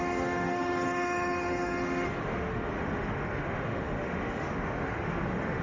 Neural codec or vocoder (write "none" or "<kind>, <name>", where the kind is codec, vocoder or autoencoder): autoencoder, DAC-VAE